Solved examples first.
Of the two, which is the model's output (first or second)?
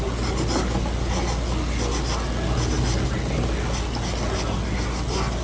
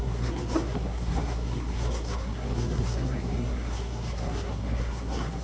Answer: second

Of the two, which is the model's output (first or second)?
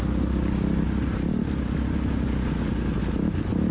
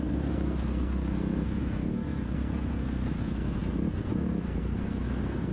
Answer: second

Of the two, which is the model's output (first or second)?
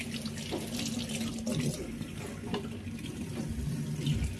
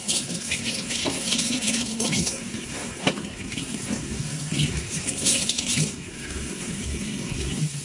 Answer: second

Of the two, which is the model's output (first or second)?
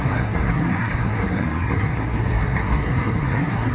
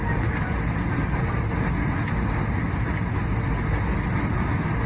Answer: first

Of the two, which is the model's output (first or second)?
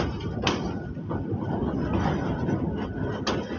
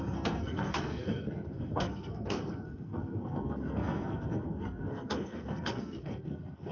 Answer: second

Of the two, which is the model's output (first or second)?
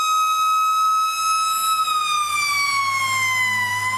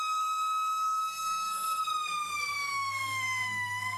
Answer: second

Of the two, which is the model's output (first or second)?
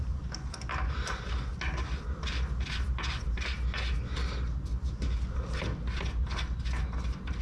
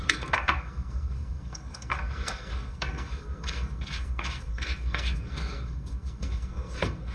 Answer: second